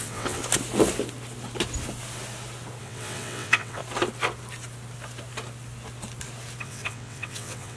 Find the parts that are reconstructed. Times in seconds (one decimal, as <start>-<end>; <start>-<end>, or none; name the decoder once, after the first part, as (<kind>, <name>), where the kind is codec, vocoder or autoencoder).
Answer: 0.0-0.4 (vocoder, WaveNeXt); 2.8-3.8; 6.6-7.8